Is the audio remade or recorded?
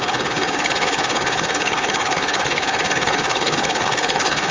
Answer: remade